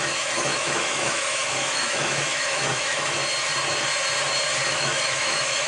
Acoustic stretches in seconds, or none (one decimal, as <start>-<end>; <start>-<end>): 3.2-4.7